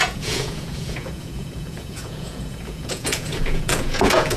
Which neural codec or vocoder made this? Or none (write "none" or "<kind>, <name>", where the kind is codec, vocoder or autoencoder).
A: vocoder, Vocos